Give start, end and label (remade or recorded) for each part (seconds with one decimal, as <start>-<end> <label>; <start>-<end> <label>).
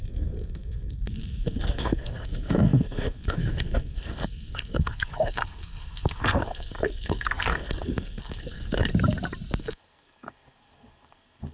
0.0-8.9 remade; 8.9-9.6 recorded; 9.6-11.5 remade